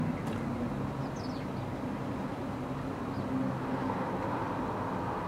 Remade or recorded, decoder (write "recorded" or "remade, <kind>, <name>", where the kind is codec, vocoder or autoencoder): recorded